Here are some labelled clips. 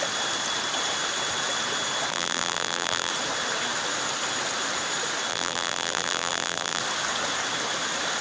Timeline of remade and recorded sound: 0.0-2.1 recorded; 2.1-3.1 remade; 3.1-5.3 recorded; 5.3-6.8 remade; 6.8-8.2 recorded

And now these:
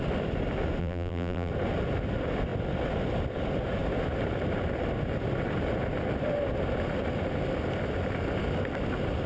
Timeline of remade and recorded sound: 0.0-0.8 recorded; 0.8-1.5 remade; 1.5-9.3 recorded

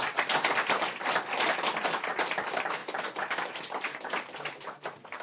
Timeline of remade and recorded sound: 0.0-3.9 recorded; 3.9-4.5 remade; 4.5-5.2 recorded